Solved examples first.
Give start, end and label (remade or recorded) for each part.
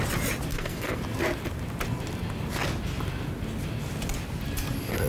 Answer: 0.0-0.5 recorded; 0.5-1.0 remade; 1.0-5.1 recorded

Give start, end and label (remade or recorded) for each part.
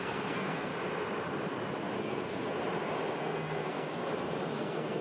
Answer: 0.0-0.7 remade; 0.7-2.0 recorded; 2.0-2.6 remade; 2.6-3.2 recorded; 3.2-4.0 remade; 4.0-4.5 recorded; 4.5-5.0 remade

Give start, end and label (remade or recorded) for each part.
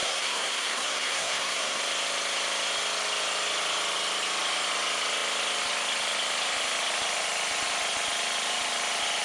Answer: 0.0-1.8 remade; 1.8-9.2 recorded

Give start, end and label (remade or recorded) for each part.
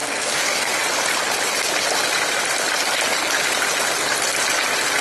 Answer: 0.0-0.7 remade; 0.7-5.0 recorded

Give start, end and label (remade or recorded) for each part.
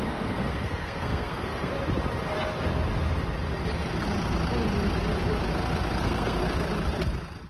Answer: 0.0-1.7 remade; 1.7-6.0 recorded; 6.0-6.4 remade; 6.4-7.5 recorded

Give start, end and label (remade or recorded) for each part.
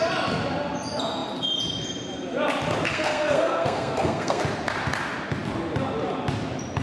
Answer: 0.0-2.9 recorded; 2.9-4.4 remade; 4.4-6.8 recorded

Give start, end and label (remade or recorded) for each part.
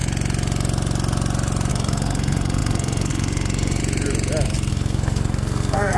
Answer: 0.0-1.7 recorded; 1.7-3.8 remade; 3.8-4.7 recorded; 4.7-6.0 remade